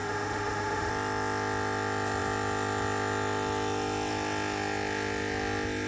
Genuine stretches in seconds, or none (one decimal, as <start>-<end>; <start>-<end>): 0.9-5.9